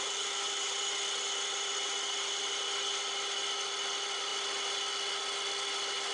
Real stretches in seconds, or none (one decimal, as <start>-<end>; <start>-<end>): 0.0-6.1